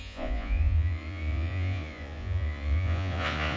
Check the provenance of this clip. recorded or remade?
remade